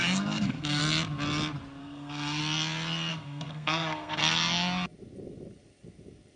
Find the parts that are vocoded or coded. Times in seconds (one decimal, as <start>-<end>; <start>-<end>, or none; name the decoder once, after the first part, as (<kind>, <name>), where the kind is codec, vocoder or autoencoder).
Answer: 0.0-0.8 (codec, SNAC); 1.8-2.4; 3.1-4.2

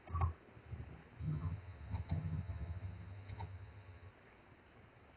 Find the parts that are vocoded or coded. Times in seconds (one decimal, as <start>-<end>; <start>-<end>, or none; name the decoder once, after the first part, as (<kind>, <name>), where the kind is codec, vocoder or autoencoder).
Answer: 1.2-4.1 (vocoder, HiFi-GAN)

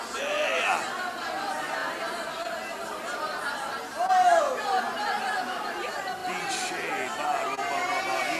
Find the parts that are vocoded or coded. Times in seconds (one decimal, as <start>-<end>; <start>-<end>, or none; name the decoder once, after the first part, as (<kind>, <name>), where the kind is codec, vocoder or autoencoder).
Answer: none

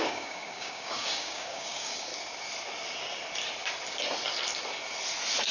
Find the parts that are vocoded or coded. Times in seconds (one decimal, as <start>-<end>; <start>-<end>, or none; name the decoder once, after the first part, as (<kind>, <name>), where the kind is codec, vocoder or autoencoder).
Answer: 0.0-2.1 (codec, DAC)

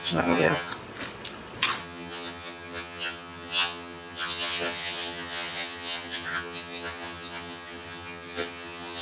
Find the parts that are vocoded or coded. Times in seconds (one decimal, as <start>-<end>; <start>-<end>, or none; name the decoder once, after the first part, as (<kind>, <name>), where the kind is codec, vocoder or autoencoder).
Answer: 0.0-0.7 (vocoder, HiFi-GAN); 1.8-9.0

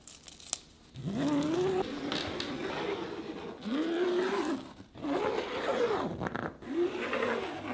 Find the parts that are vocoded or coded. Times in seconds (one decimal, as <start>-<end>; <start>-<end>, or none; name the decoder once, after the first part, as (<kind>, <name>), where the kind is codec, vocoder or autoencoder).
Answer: 5.7-7.3 (vocoder, BigVGAN v2)